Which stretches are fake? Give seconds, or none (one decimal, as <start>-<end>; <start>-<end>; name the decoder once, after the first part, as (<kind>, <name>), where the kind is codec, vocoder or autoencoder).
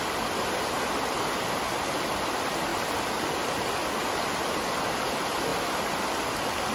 none